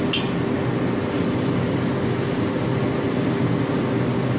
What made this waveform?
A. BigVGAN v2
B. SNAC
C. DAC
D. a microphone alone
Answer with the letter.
D